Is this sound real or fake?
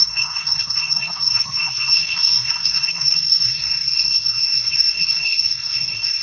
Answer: fake